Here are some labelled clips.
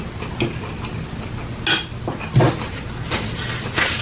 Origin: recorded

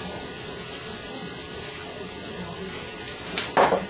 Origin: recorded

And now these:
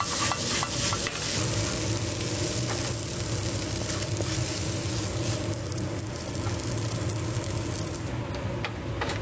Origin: recorded